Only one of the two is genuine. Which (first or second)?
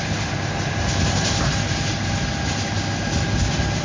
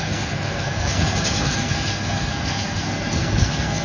first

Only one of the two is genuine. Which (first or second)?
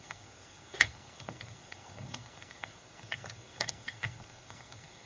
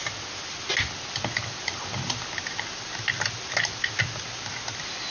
second